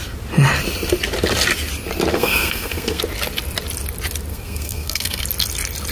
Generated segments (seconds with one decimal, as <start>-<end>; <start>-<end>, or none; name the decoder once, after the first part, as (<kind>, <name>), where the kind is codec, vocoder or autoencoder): 2.1-3.0 (codec, SNAC); 4.3-5.2